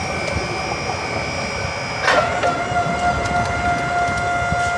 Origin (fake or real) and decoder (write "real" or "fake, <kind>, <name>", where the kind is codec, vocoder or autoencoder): real